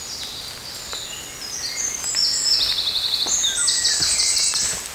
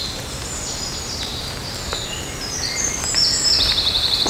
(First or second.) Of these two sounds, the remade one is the second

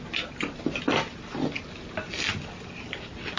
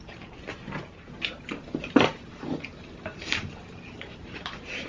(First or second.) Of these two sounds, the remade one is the second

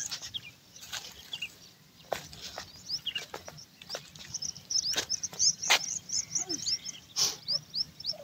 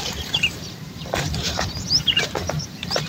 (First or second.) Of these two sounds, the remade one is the second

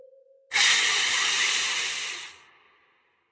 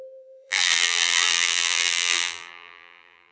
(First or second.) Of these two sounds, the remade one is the second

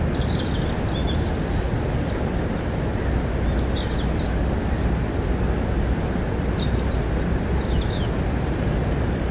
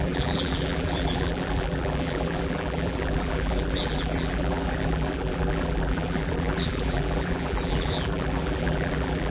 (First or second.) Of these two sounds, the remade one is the second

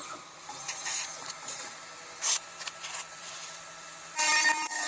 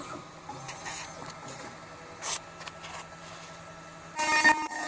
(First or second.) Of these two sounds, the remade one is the first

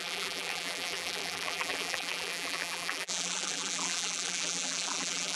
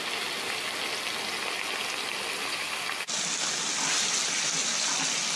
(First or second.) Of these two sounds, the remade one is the first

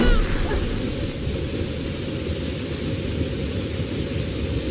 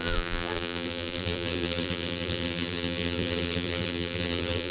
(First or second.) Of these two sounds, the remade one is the second